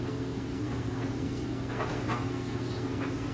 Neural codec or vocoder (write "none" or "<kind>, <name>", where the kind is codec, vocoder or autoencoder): codec, SNAC